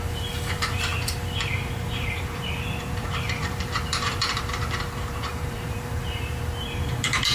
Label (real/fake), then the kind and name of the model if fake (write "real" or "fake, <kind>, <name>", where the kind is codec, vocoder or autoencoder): fake, vocoder, BigVGAN v2